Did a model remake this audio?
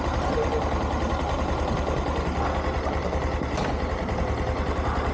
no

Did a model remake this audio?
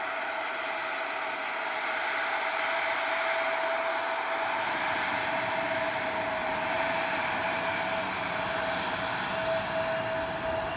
no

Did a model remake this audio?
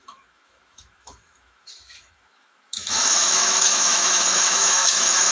yes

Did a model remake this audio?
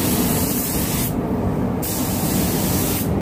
no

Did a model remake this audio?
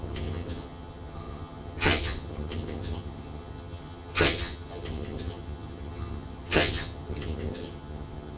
yes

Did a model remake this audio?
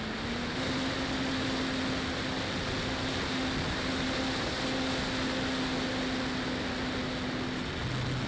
no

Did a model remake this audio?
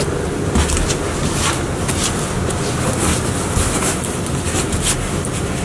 no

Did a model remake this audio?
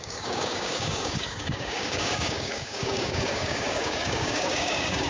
yes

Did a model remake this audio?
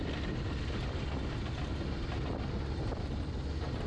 no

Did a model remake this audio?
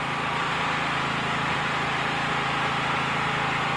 no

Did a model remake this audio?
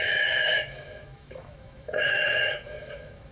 yes